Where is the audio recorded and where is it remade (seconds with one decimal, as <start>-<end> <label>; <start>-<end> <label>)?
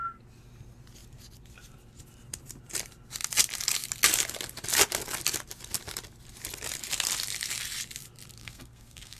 0.0-8.4 recorded; 8.4-9.2 remade